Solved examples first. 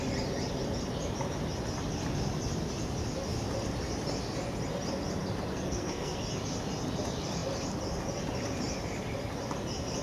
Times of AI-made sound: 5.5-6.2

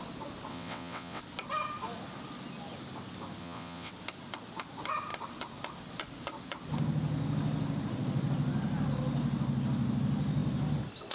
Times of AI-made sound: 0.5-1.2; 3.4-3.9

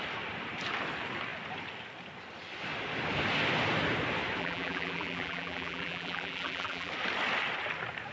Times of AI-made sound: 4.4-6.9